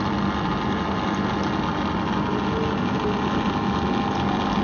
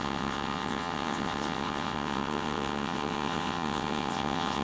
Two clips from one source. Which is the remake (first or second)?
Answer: second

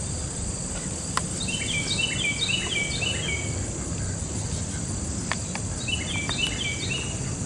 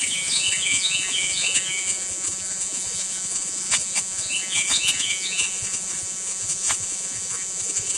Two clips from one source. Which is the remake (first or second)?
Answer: second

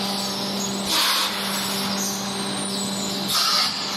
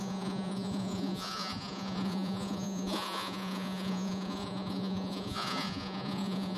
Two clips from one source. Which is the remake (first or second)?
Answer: second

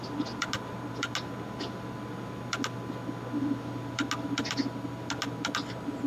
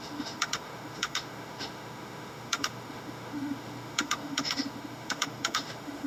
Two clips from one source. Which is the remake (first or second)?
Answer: second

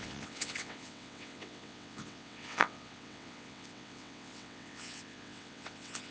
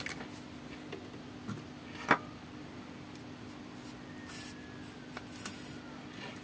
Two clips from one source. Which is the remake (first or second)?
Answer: first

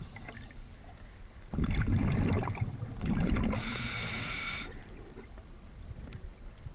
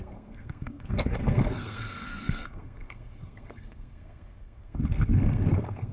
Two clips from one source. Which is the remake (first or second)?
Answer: second